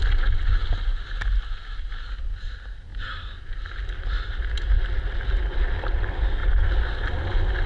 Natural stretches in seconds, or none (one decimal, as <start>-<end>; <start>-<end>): 0.0-6.4; 7.1-7.7